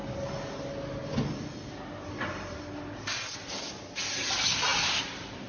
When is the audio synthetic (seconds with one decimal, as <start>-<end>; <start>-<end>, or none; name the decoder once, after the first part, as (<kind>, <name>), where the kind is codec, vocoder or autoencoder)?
none